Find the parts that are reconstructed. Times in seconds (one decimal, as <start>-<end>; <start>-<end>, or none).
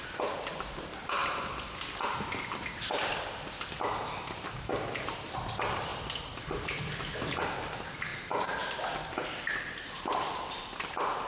none